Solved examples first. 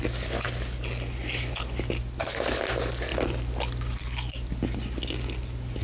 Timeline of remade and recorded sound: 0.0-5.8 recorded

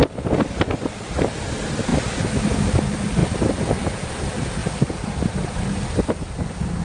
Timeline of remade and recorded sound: 0.0-4.6 recorded; 4.6-6.8 remade

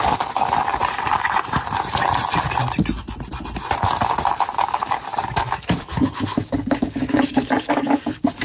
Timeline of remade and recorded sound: 0.0-0.8 remade; 0.8-4.6 recorded; 4.6-8.4 remade